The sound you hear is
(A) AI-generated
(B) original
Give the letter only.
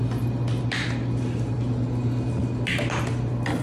B